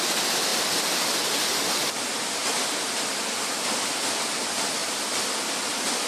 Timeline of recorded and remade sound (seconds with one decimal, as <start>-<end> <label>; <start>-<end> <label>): 0.0-6.1 recorded